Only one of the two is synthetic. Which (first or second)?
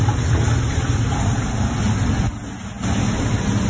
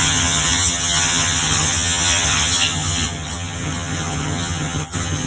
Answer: second